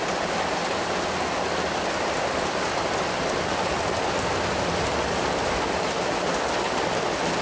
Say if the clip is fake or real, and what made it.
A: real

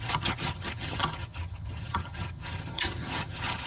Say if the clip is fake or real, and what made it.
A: fake, vocoder, HiFi-GAN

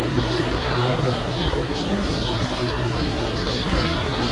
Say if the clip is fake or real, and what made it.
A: fake, codec, SNAC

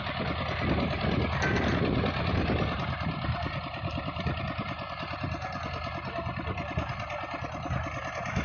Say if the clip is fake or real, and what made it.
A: real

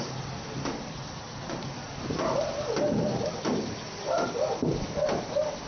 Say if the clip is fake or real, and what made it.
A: real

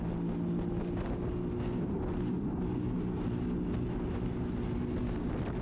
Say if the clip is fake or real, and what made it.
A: real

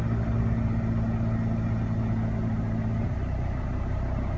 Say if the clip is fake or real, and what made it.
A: real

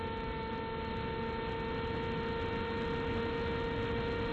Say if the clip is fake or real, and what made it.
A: real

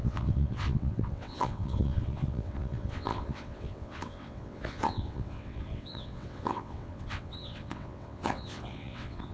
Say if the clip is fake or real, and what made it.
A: fake, vocoder, WaveNeXt